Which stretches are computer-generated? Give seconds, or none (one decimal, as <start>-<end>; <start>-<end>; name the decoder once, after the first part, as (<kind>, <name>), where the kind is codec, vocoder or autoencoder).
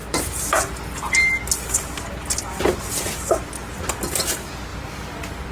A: 4.7-5.5 (vocoder, BigVGAN v2)